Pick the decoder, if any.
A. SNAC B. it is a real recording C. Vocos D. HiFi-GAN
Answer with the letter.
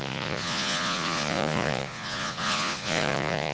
C